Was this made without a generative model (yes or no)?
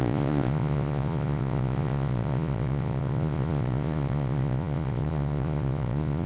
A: no